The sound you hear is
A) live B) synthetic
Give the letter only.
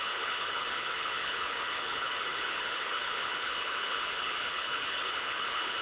B